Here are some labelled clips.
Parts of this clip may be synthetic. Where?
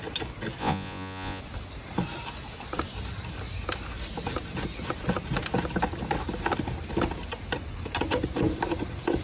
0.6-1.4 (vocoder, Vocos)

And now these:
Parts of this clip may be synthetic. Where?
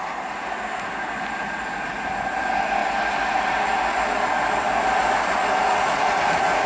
5.7-6.7 (vocoder, Vocos)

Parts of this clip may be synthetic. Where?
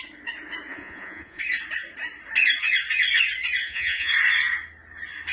0.7-1.4 (vocoder, Vocos); 3.6-4.1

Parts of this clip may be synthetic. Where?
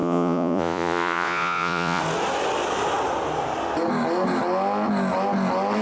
0.0-2.0 (vocoder, Vocos)